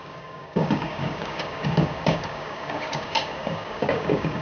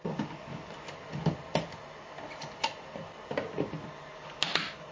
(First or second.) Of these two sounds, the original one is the second